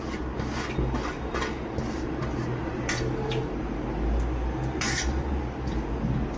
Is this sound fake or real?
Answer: fake